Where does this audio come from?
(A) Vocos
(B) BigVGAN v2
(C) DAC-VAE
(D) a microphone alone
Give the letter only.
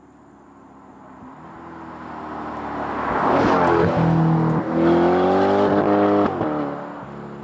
D